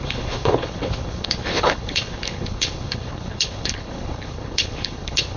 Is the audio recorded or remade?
remade